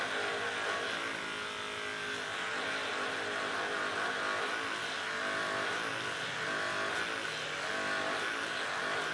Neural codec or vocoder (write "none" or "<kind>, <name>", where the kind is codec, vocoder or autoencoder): none